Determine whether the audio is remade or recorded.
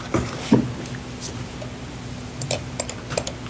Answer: recorded